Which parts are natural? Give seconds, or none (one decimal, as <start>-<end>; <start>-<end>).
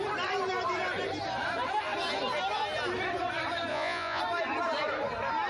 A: 0.0-3.7; 4.2-5.5